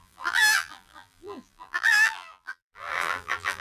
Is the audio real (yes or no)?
no